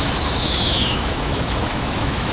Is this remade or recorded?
remade